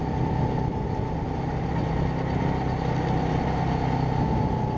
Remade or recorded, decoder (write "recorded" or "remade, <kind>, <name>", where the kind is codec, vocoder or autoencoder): recorded